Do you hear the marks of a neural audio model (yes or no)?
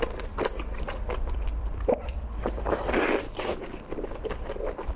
yes